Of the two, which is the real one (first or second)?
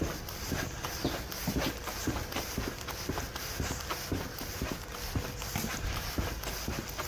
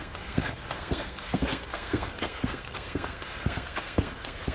first